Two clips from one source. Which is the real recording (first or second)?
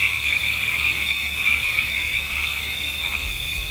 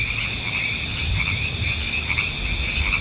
second